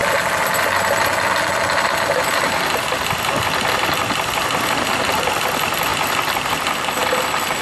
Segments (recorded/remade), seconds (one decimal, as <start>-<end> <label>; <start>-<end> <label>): 0.0-7.6 recorded

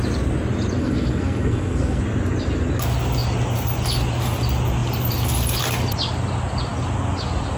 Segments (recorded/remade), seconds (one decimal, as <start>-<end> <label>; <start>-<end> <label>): 0.0-0.8 recorded; 0.8-2.0 remade; 2.0-7.6 recorded

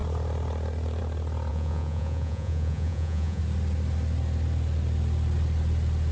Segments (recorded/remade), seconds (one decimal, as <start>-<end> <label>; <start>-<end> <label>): 0.0-1.5 recorded; 1.5-3.4 remade; 3.4-6.1 recorded

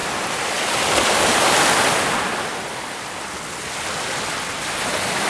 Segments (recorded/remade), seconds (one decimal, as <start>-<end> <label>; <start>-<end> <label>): 0.0-3.2 remade; 3.2-5.3 recorded

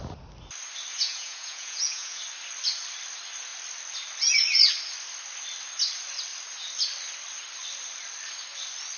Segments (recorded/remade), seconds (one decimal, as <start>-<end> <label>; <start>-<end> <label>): 0.0-0.9 recorded; 0.9-2.2 remade; 2.2-9.0 recorded

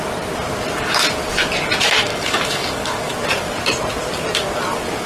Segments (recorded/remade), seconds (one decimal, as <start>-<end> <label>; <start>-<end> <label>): 0.0-2.1 recorded; 2.1-3.1 remade; 3.1-5.1 recorded